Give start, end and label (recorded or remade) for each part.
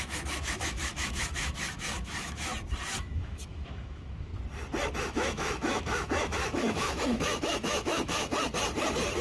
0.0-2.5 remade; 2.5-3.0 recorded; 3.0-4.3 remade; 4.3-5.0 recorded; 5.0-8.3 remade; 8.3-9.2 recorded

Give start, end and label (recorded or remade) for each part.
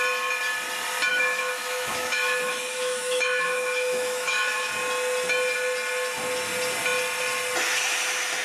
0.0-1.1 recorded; 1.1-4.7 remade; 4.7-8.4 recorded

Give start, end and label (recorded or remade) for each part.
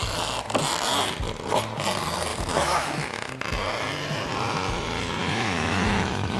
0.0-2.3 recorded; 2.3-3.3 remade; 3.3-5.2 recorded; 5.2-6.4 remade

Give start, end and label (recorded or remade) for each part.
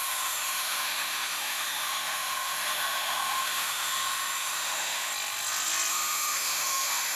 0.0-5.1 remade; 5.1-5.9 recorded; 5.9-7.2 remade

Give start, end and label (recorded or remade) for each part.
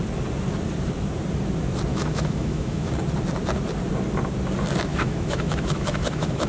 0.0-1.9 recorded; 1.9-2.9 remade; 2.9-4.9 recorded; 4.9-6.5 remade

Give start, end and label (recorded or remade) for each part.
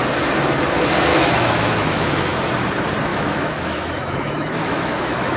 0.0-1.1 recorded; 1.1-2.5 remade; 2.5-3.1 recorded; 3.1-5.4 remade